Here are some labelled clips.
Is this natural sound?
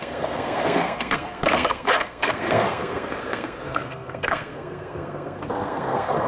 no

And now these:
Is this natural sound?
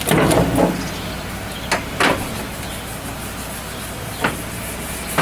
yes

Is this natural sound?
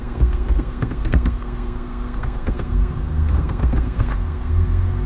no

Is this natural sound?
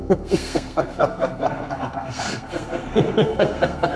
no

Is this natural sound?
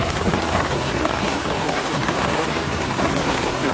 no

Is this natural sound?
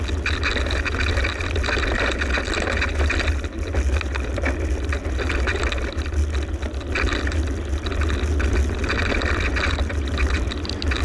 yes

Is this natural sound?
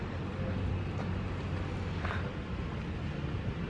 yes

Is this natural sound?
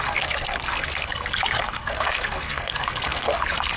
no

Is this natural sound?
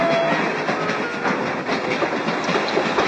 yes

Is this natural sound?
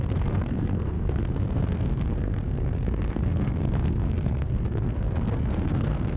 no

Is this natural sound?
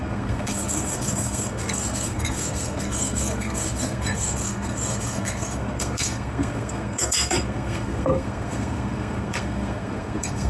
no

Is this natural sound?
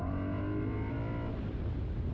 yes